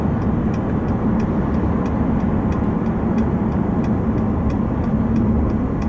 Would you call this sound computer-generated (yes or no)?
no